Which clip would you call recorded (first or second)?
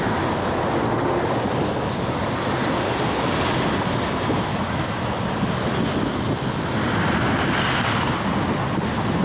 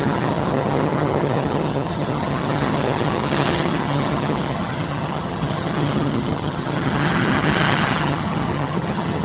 first